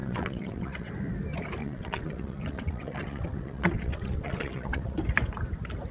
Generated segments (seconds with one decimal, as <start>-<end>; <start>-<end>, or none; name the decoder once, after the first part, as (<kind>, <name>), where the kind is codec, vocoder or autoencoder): 0.0-0.9 (vocoder, WaveNeXt); 1.6-5.0